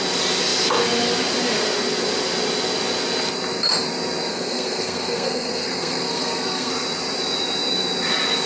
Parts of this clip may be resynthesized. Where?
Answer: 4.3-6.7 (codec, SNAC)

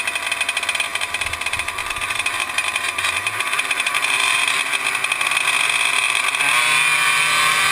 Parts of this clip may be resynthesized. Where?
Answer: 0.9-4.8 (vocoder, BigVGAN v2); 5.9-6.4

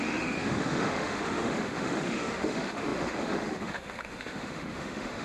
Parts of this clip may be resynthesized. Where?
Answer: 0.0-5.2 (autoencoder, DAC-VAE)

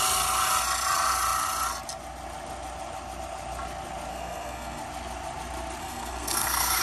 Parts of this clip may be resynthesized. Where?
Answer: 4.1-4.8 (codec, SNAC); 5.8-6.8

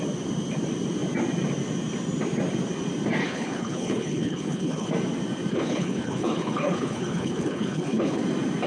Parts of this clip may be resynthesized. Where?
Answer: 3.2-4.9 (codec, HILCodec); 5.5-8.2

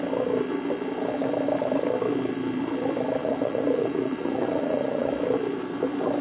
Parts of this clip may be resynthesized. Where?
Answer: 3.2-5.1 (vocoder, Vocos)

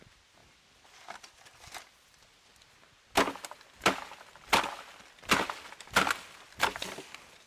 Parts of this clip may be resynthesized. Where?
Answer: none